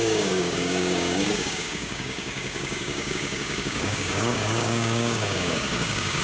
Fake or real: fake